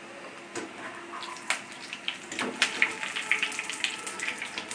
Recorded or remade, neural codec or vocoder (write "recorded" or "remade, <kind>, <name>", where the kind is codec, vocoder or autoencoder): recorded